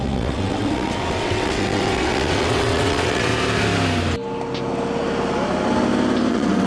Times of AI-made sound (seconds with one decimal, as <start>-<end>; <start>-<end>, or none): 0.0-3.3; 6.3-6.7